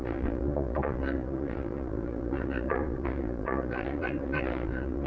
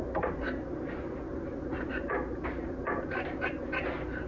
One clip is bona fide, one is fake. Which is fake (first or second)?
first